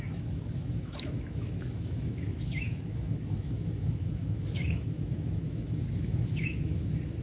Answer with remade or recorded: remade